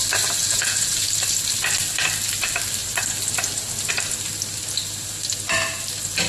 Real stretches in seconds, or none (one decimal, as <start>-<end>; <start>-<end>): 0.0-0.4; 1.1-6.3